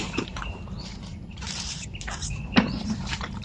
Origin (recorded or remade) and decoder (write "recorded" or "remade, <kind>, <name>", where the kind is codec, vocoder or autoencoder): remade, vocoder, BigVGAN v2